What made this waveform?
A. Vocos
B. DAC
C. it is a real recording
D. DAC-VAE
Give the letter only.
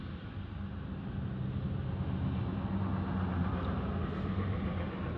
C